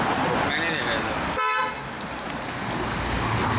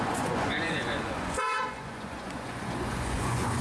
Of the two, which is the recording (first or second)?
first